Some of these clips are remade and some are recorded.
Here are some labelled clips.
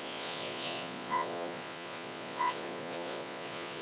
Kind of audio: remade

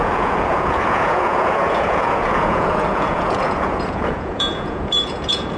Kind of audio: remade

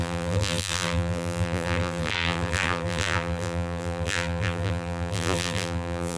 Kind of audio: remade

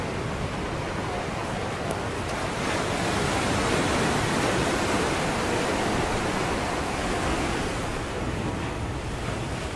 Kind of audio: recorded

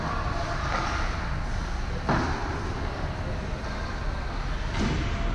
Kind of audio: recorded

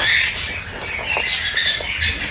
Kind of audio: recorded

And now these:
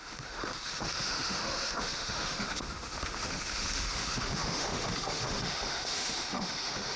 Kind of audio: remade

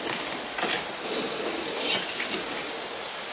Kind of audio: recorded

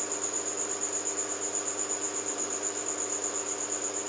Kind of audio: recorded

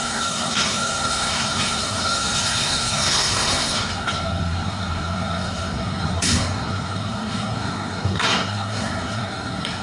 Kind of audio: remade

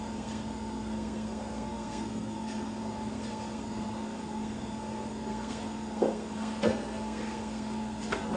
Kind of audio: remade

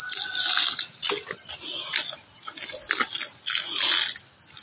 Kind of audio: recorded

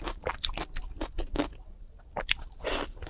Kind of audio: recorded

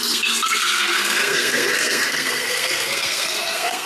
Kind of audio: remade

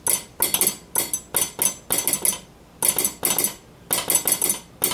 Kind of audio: recorded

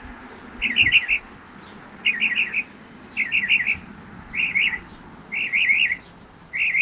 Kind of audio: recorded